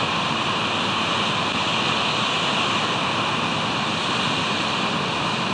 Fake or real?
real